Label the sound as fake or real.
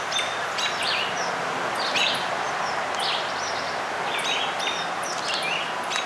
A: real